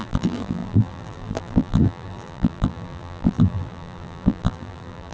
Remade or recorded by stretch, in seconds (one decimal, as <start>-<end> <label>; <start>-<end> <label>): 0.0-5.1 remade